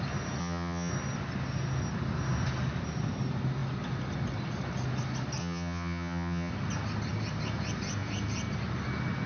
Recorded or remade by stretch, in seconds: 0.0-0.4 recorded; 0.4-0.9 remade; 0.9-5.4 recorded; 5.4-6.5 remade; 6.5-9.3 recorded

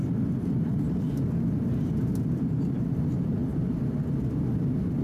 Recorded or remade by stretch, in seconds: 0.0-3.4 remade; 3.4-4.5 recorded; 4.5-5.0 remade

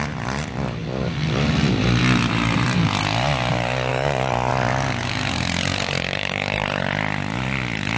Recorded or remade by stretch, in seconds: 0.0-3.9 recorded; 3.9-4.5 remade; 4.5-5.7 recorded; 5.7-6.8 remade; 6.8-8.0 recorded